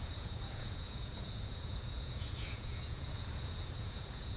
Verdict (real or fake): fake